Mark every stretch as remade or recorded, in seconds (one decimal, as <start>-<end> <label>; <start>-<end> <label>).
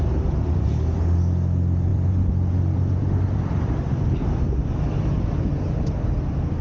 0.0-1.9 recorded; 1.9-5.3 remade; 5.3-6.6 recorded